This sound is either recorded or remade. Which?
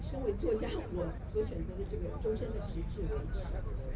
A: recorded